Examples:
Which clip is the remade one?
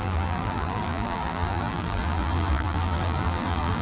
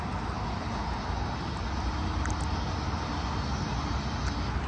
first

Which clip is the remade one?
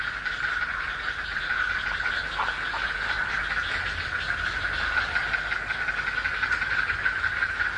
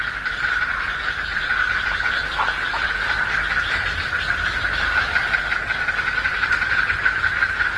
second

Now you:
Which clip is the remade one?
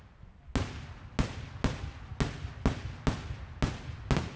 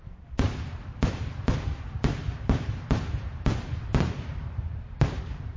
second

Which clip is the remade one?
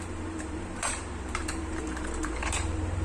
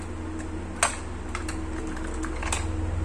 first